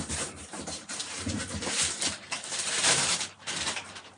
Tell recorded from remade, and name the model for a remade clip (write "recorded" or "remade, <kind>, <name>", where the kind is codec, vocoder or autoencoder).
remade, vocoder, BigVGAN v2